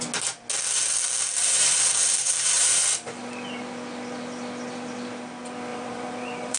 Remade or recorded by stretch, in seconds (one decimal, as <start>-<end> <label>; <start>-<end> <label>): 0.0-1.4 recorded; 1.4-2.8 remade; 2.8-5.7 recorded; 5.7-6.6 remade